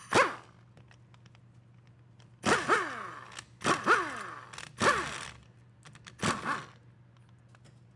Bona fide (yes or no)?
yes